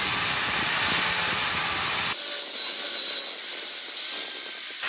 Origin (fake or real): real